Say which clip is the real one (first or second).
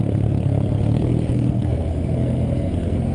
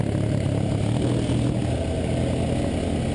second